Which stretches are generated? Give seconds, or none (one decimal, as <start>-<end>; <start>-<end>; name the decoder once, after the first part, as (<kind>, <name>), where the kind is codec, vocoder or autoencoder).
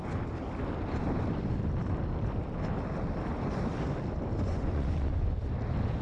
4.5-5.4 (vocoder, Vocos)